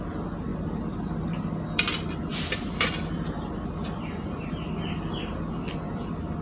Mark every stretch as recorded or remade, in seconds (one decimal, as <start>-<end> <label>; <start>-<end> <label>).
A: 0.0-0.5 recorded; 0.5-1.8 remade; 1.8-2.3 recorded; 2.3-4.4 remade; 4.4-6.4 recorded